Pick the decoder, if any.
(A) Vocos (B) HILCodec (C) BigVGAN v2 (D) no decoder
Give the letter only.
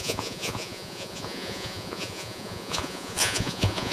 A